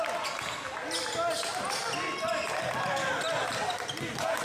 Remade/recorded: recorded